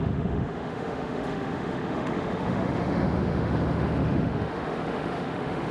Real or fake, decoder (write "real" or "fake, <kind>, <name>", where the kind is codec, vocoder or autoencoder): fake, autoencoder, DAC-VAE